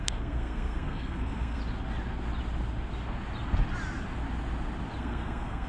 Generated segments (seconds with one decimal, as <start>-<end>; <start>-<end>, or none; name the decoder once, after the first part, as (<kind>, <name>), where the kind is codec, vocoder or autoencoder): 0.0-1.6 (codec, SNAC); 5.0-5.7